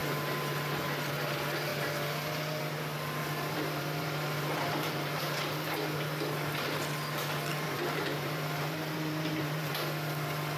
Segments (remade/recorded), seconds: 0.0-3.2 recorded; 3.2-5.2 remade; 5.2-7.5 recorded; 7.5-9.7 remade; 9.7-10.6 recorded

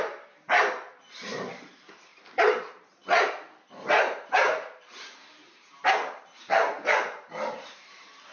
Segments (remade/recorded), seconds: 0.0-2.1 remade; 2.1-2.6 recorded; 2.6-3.0 remade; 3.0-3.9 recorded; 3.9-8.3 remade

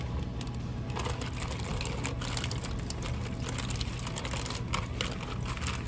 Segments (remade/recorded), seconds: 0.0-5.9 recorded

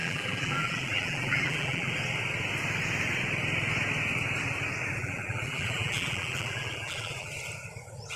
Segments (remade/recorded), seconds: 0.0-1.9 remade; 1.9-5.0 recorded; 5.0-7.3 remade; 7.3-8.2 recorded

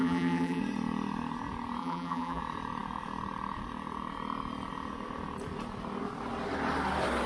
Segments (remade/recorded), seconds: 0.0-0.6 remade; 0.6-1.8 recorded; 1.8-2.4 remade; 2.4-7.3 recorded